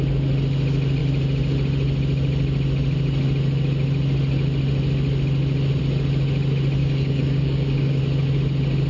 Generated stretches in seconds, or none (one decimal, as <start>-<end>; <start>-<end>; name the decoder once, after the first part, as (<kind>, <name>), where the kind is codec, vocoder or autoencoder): 6.8-8.0 (codec, DAC)